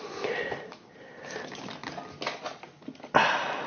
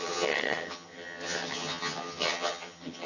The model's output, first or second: second